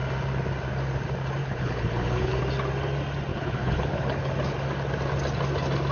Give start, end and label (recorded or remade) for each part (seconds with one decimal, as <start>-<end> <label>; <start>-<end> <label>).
0.0-1.4 recorded; 1.4-2.4 remade; 2.4-3.3 recorded; 3.3-4.3 remade; 4.3-5.9 recorded